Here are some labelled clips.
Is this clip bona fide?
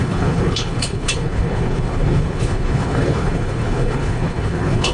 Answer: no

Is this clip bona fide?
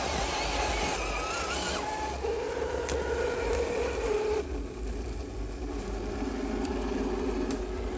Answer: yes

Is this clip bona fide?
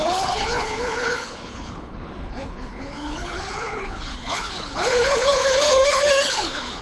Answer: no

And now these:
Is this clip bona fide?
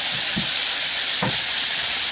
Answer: yes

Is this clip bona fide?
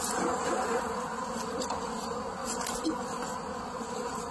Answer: yes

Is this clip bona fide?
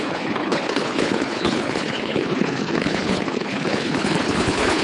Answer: no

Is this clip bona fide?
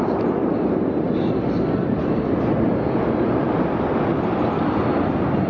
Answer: yes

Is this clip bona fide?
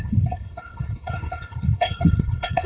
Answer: no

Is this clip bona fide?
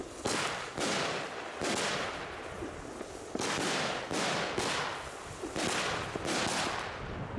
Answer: yes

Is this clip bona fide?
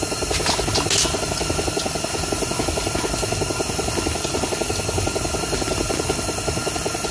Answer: yes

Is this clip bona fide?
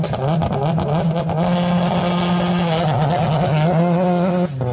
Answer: yes